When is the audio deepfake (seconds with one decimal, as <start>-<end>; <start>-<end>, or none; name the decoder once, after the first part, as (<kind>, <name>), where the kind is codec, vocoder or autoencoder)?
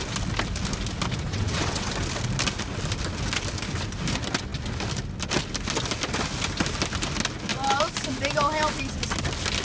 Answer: 1.3-1.9 (vocoder, WaveNeXt)